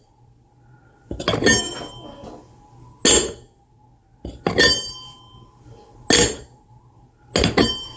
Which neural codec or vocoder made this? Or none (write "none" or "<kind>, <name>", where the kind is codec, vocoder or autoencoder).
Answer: none